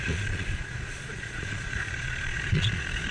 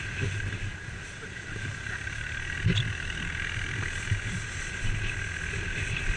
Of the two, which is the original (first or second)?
second